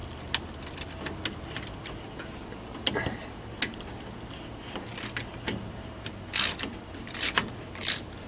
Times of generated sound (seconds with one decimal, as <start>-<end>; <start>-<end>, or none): none